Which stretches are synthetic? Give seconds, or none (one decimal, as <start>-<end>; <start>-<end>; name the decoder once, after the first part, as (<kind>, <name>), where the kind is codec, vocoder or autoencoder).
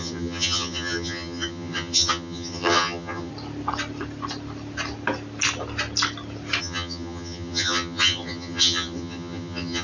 0.0-3.3 (vocoder, HiFi-GAN); 6.6-9.8